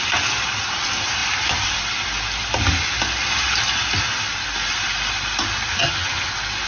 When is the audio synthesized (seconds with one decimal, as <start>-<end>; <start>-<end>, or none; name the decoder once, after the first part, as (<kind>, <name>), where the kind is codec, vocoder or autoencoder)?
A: 5.7-6.3 (vocoder, HiFi-GAN)